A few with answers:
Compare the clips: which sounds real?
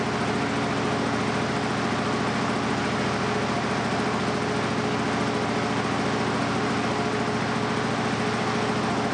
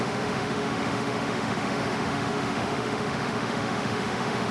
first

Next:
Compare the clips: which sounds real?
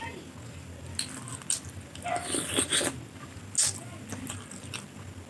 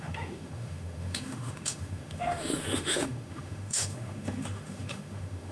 first